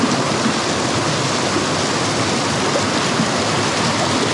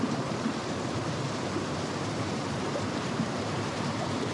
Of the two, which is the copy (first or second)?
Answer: second